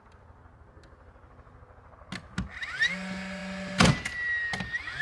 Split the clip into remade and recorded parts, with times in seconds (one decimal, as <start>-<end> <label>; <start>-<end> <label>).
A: 0.0-5.0 recorded